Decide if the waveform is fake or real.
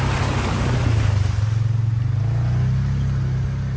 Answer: real